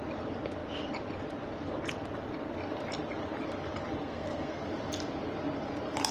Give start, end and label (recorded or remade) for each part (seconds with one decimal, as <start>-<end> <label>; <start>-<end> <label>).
0.0-4.0 recorded; 4.0-4.6 remade; 4.6-6.1 recorded